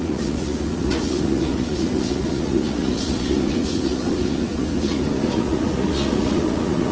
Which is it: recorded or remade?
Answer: remade